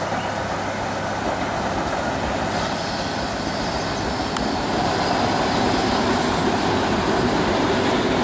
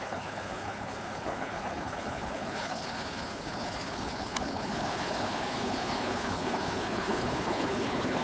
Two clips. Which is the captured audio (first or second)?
first